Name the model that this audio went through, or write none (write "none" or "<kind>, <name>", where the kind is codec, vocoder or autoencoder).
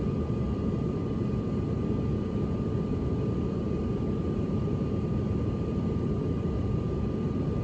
vocoder, BigVGAN v2